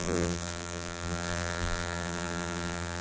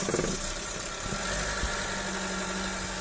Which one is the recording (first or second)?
second